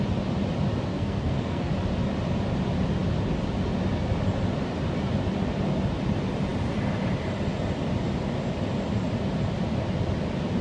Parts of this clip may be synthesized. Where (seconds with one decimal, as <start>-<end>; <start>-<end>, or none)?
0.9-1.7